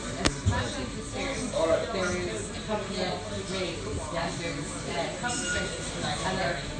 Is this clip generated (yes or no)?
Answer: no